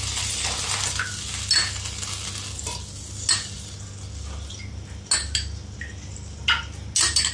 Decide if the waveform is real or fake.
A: real